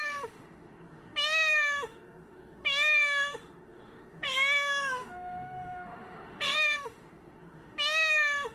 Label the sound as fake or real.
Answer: fake